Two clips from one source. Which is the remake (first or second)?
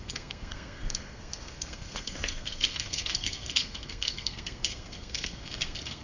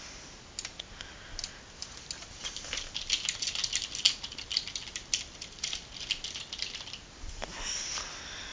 first